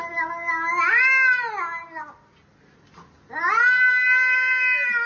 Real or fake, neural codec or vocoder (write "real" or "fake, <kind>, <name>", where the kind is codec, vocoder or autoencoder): real